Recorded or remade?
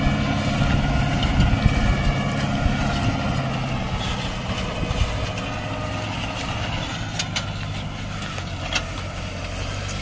recorded